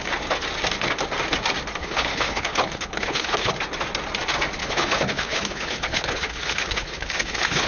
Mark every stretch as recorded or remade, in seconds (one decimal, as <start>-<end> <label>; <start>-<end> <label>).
0.0-1.8 recorded; 1.8-3.5 remade; 3.5-4.6 recorded; 4.6-7.7 remade

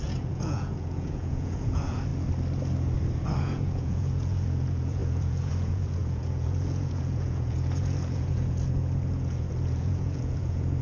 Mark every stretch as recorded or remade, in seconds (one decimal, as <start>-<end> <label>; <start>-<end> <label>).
0.0-2.1 remade; 2.1-3.4 recorded; 3.4-10.8 remade

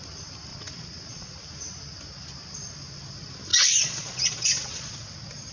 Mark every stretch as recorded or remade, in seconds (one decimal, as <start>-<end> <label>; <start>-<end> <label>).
0.0-0.5 recorded; 0.5-1.3 remade; 1.3-3.5 recorded; 3.5-4.9 remade; 4.9-5.5 recorded

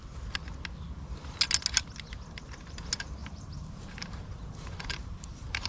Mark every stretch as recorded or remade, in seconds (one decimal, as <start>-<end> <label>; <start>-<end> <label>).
0.0-3.2 recorded; 3.2-5.7 remade

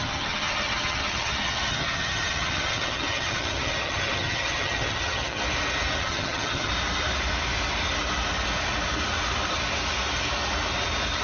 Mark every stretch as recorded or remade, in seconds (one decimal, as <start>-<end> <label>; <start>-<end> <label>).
0.0-5.4 remade; 5.4-6.0 recorded; 6.0-6.7 remade; 6.7-11.2 recorded

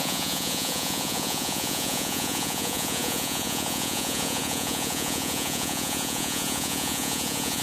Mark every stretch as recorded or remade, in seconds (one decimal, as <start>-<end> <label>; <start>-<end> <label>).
0.0-7.6 remade

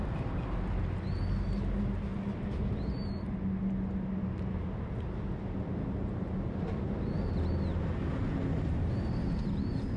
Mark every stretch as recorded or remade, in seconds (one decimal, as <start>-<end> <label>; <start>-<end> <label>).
0.0-8.7 recorded; 8.7-10.0 remade

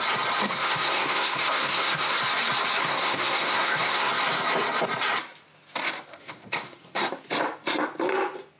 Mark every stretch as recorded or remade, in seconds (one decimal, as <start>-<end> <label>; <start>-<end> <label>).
0.0-0.4 recorded; 0.4-2.2 remade; 2.2-2.8 recorded; 2.8-4.1 remade; 4.1-6.1 recorded; 6.1-7.1 remade; 7.1-8.6 recorded